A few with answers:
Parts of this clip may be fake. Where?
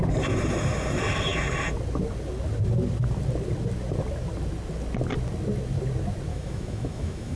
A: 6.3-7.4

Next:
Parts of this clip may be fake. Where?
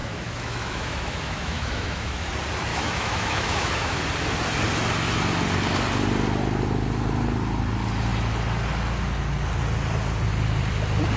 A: 0.0-2.3; 2.7-4.0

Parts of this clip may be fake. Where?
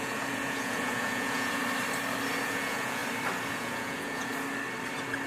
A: 0.0-1.6; 2.4-3.0; 3.5-4.3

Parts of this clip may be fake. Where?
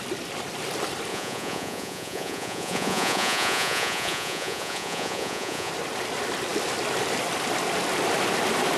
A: 1.1-5.7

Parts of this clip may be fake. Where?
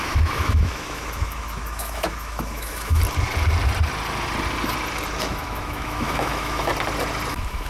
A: 0.0-3.0; 5.2-6.7; 7.3-7.7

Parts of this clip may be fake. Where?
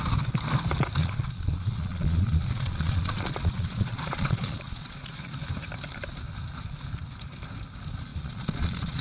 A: 1.0-5.3; 8.1-9.0